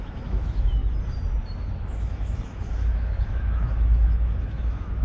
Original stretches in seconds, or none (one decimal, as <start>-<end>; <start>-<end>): 0.8-1.9